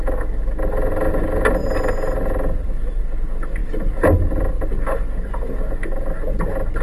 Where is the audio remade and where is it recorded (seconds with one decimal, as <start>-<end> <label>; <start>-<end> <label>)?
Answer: 0.0-1.6 recorded; 1.6-3.0 remade; 3.0-6.8 recorded